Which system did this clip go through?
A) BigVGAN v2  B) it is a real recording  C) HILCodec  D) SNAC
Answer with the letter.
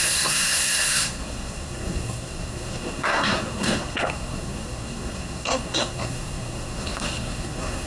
D